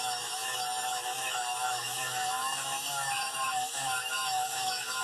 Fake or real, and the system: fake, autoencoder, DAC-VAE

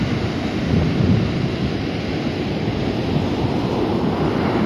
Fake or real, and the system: real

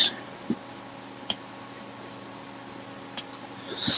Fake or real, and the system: real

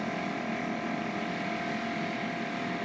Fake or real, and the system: real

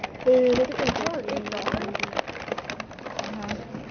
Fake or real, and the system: real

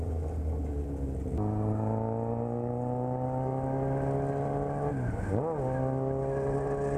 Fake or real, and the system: real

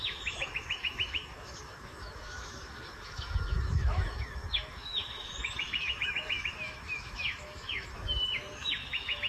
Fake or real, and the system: fake, autoencoder, DAC-VAE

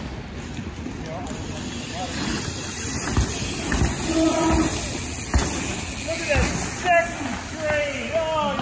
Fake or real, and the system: real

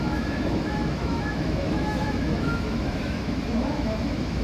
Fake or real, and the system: fake, autoencoder, DAC-VAE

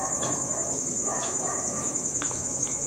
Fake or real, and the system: fake, autoencoder, DAC-VAE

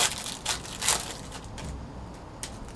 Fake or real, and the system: real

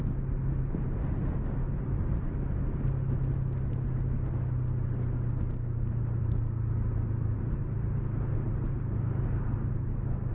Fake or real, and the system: real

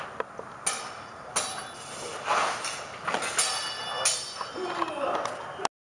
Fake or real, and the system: real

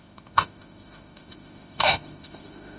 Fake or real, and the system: fake, autoencoder, DAC-VAE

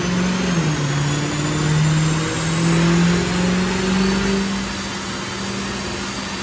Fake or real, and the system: real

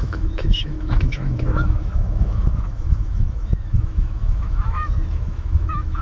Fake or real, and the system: fake, autoencoder, DAC-VAE